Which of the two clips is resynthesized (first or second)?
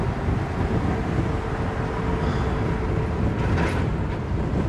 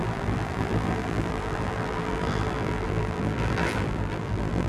second